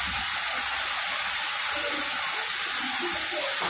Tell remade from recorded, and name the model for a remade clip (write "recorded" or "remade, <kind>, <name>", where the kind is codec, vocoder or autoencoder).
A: recorded